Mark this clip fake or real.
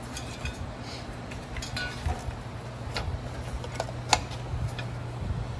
real